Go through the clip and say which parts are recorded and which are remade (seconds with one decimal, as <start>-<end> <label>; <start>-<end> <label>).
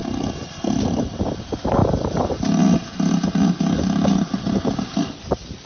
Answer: 0.0-5.7 recorded